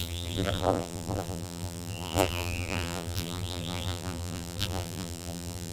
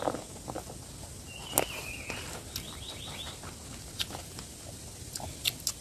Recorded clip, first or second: second